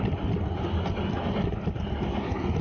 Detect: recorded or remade recorded